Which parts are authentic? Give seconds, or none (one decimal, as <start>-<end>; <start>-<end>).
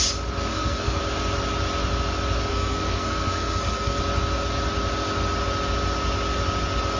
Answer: 0.0-0.5; 1.0-2.5; 4.0-7.0